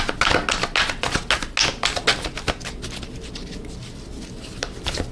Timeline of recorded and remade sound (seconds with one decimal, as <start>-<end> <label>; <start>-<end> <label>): 0.0-5.1 recorded